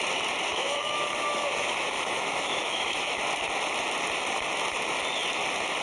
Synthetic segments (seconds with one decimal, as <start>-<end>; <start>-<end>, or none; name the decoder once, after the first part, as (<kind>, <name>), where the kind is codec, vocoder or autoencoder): 0.5-3.2 (autoencoder, DAC-VAE)

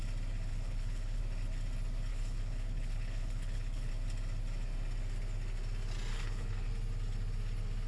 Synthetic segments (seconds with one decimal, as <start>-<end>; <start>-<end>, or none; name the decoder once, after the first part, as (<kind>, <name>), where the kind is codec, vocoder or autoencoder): 0.5-1.2 (codec, HILCodec); 2.1-3.9; 6.1-6.7